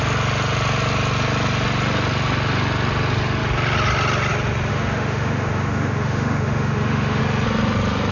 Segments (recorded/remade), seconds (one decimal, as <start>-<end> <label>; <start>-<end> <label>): 0.0-4.7 recorded; 4.7-7.2 remade; 7.2-8.1 recorded

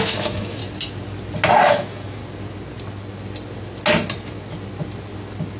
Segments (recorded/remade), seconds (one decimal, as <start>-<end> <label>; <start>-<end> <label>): 0.0-0.6 remade; 0.6-1.7 recorded; 1.7-2.2 remade; 2.2-5.6 recorded

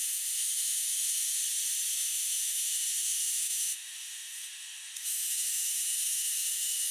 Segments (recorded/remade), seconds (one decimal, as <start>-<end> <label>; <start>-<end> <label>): 0.0-1.4 remade; 1.4-1.9 recorded; 1.9-6.9 remade

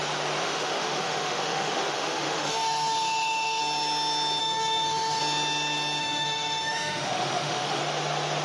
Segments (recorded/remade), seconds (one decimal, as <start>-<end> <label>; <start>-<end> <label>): 0.0-0.4 recorded; 0.4-3.6 remade; 3.6-4.4 recorded; 4.4-5.2 remade; 5.2-6.0 recorded; 6.0-7.8 remade; 7.8-8.4 recorded

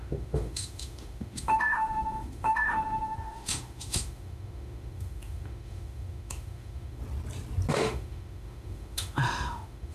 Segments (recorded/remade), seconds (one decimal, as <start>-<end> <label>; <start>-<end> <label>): 0.0-7.0 remade; 7.0-7.7 recorded; 7.7-9.9 remade

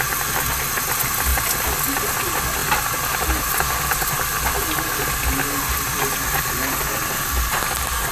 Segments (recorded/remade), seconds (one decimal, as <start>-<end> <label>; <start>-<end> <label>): 0.0-8.1 recorded

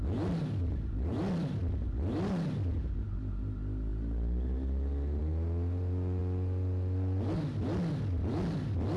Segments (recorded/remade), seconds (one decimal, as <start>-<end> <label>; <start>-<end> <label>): 0.0-9.0 recorded